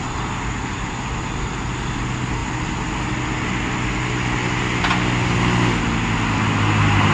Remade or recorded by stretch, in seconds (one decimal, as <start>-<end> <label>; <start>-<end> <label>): 0.0-7.1 recorded